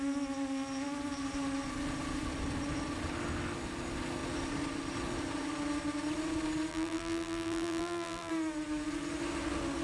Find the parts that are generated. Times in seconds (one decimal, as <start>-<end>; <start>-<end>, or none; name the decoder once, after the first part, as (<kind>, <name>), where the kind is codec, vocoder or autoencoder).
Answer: 6.7-8.3 (vocoder, BigVGAN v2)